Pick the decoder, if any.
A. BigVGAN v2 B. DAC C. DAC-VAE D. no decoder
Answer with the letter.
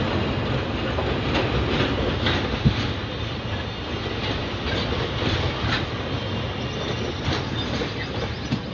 D